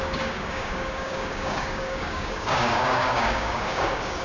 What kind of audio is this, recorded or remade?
remade